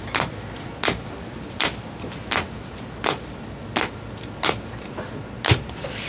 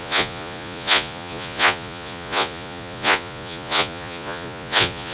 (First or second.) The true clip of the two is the first